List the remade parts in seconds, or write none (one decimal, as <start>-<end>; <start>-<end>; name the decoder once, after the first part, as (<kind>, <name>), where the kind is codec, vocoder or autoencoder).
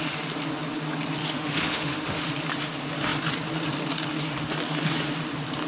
1.2-2.3 (autoencoder, DAC-VAE)